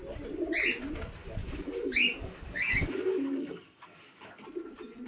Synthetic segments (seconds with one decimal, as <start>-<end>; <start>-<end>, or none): 1.2-4.3